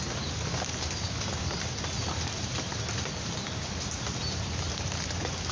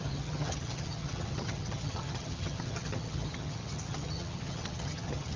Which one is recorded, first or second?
first